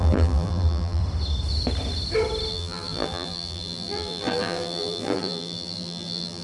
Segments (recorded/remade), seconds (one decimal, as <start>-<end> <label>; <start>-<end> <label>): 0.0-1.0 remade; 1.0-2.5 recorded; 2.5-6.4 remade